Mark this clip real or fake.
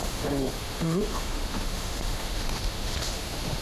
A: fake